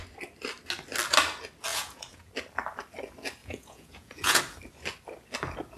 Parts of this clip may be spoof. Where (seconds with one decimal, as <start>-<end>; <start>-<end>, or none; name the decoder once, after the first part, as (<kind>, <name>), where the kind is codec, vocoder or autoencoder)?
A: 1.7-2.3 (vocoder, Vocos); 3.4-4.4